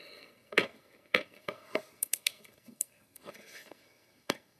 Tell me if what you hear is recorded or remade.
remade